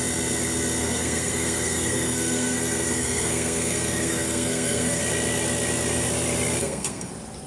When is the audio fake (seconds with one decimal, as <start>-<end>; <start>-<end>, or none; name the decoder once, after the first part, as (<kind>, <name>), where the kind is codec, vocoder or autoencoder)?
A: 0.8-5.0 (codec, SNAC); 6.6-7.1